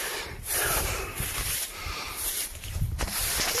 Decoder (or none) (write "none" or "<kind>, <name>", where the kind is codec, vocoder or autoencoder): vocoder, BigVGAN v2